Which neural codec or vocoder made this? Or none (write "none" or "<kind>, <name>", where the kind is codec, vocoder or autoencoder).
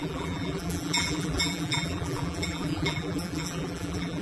vocoder, BigVGAN v2